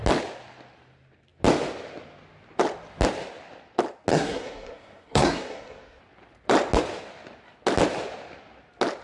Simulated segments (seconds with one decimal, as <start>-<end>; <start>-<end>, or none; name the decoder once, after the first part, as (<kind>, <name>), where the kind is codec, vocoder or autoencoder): 4.1-6.0 (codec, SNAC)